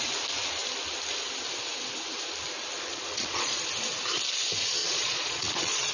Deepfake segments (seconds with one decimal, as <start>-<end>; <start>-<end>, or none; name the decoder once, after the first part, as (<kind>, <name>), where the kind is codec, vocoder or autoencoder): 2.9-3.6 (vocoder, Vocos); 4.8-5.9